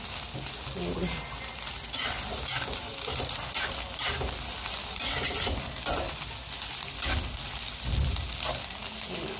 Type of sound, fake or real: real